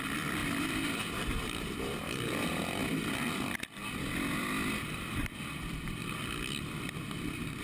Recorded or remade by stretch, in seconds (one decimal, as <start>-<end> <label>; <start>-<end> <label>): 0.0-2.8 remade; 2.8-4.4 recorded; 4.4-6.0 remade; 6.0-7.6 recorded